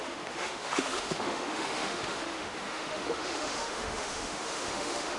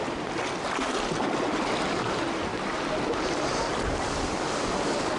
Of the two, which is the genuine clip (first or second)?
second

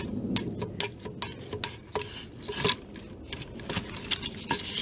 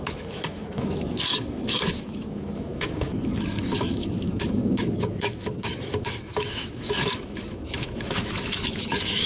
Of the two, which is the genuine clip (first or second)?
first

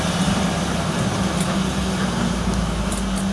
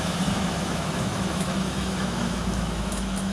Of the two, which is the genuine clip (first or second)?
first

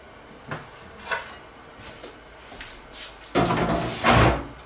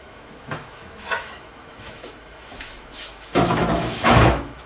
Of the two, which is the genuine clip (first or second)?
first